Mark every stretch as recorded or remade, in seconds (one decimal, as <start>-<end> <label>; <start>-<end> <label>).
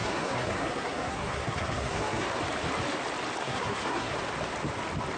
0.0-2.4 remade; 2.4-3.4 recorded; 3.4-4.2 remade; 4.2-5.2 recorded